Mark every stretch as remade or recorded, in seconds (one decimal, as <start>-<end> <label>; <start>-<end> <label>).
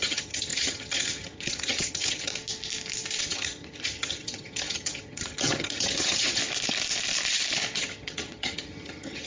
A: 0.0-2.3 remade; 2.3-3.2 recorded; 3.2-6.4 remade; 6.4-7.8 recorded; 7.8-9.3 remade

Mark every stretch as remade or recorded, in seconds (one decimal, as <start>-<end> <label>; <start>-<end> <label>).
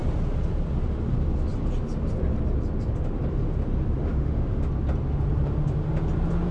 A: 0.0-4.0 recorded; 4.0-4.6 remade; 4.6-6.5 recorded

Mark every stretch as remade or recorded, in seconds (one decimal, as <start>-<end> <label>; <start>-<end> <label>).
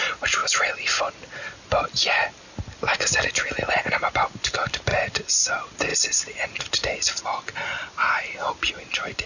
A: 0.0-4.9 recorded; 4.9-5.5 remade; 5.5-5.9 recorded; 5.9-6.6 remade; 6.6-9.3 recorded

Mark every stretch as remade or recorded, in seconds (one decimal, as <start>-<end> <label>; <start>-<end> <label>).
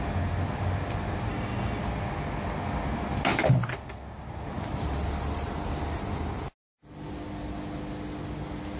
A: 0.0-1.3 recorded; 1.3-1.8 remade; 1.8-8.8 recorded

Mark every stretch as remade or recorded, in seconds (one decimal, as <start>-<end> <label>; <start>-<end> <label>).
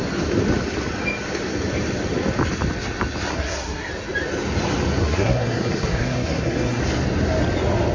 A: 0.0-3.3 recorded; 3.3-3.9 remade; 3.9-5.0 recorded; 5.0-6.8 remade; 6.8-7.9 recorded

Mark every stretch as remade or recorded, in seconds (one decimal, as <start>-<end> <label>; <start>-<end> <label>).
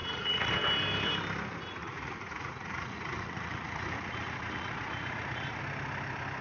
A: 0.0-0.5 remade; 0.5-1.8 recorded; 1.8-5.6 remade; 5.6-6.4 recorded